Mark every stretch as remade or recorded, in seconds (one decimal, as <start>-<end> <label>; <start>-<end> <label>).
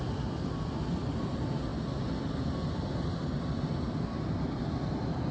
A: 0.0-5.3 recorded